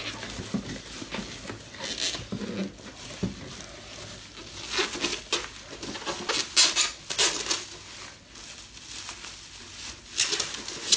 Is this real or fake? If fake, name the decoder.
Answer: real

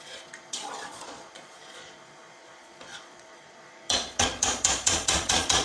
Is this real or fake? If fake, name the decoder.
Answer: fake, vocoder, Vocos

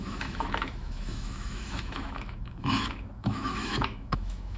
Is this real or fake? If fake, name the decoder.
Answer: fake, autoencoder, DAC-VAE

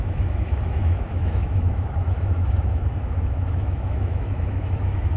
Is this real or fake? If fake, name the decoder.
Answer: fake, autoencoder, DAC-VAE